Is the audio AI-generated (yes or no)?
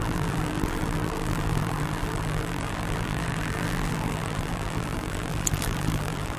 yes